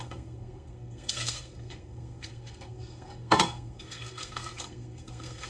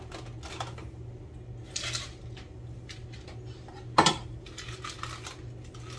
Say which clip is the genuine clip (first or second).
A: second